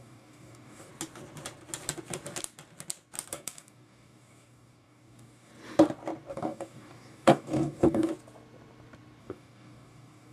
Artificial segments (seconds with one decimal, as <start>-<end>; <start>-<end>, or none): 0.0-0.9; 3.3-5.5; 6.3-8.1; 9.2-10.3